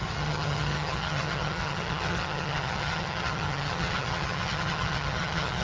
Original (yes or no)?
no